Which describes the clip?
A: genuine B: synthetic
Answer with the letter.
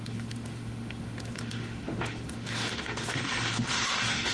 B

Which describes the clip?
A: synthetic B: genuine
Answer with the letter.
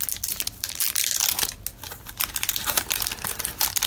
B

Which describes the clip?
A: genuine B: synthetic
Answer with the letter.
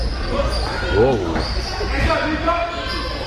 A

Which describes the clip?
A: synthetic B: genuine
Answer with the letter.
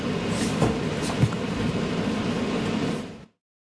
B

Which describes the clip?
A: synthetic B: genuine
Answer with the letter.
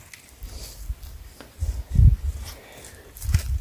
B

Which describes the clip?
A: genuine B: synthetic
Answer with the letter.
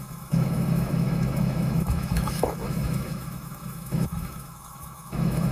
B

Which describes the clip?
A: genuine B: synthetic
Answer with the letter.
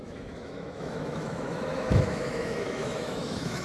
B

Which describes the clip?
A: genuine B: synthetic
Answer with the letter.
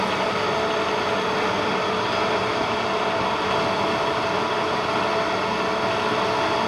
A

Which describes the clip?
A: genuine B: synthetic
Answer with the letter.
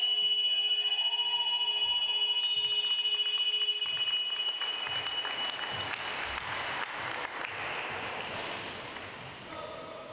A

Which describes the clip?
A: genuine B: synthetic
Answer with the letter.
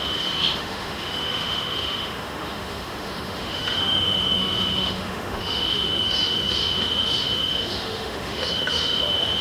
B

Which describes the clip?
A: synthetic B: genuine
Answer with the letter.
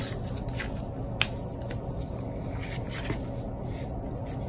B